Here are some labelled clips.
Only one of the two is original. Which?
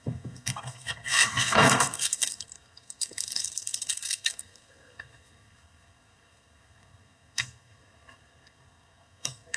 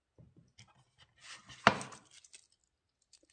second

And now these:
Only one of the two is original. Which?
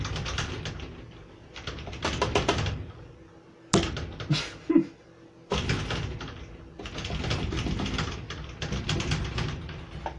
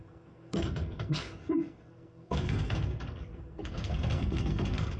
first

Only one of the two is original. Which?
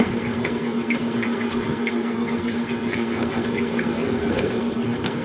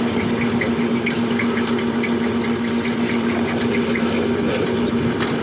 second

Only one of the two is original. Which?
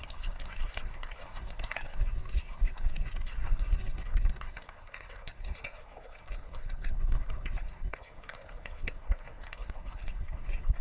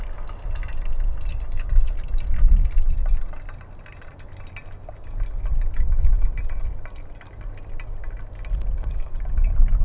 second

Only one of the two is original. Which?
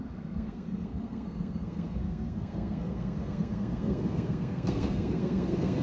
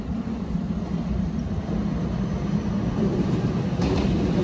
second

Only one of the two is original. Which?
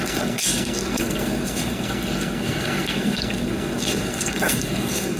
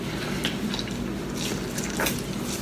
second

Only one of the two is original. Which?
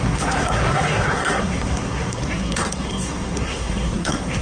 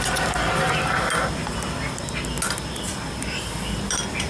second